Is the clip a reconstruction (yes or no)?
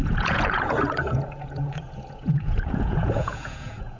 yes